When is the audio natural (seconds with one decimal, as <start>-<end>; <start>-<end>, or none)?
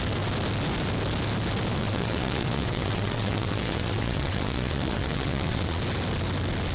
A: 0.0-1.8; 5.8-6.7